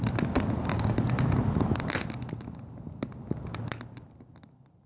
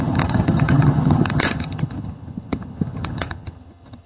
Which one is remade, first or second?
second